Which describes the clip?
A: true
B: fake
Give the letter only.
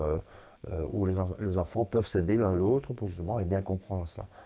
B